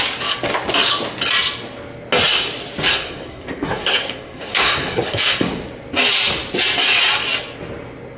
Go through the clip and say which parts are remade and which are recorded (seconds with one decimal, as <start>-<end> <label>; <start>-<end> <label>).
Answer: 0.0-2.9 recorded; 2.9-5.5 remade; 5.5-8.2 recorded